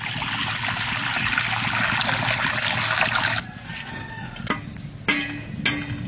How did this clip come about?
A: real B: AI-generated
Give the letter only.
A